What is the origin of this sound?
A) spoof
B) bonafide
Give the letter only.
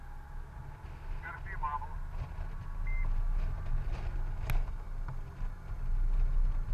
B